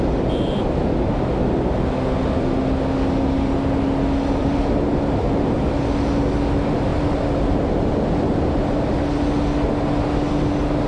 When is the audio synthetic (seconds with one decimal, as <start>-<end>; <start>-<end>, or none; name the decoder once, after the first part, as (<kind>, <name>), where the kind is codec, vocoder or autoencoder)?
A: 4.4-5.6 (vocoder, BigVGAN v2); 6.9-8.0